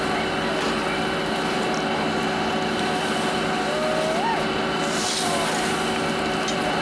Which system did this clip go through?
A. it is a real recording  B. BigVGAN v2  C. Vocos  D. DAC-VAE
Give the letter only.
A